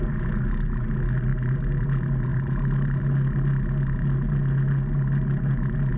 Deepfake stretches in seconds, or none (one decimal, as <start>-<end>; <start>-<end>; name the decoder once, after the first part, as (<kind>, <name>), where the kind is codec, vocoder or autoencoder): 2.3-3.0 (vocoder, BigVGAN v2)